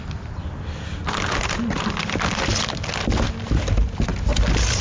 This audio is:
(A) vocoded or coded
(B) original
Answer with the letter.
B